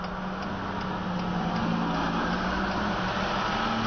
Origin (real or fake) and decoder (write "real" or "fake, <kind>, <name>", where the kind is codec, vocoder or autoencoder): real